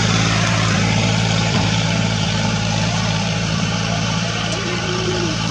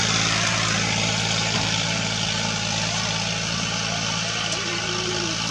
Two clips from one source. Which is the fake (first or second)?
first